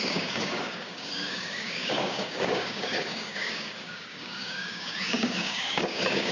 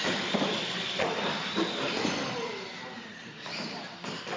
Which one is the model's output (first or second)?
first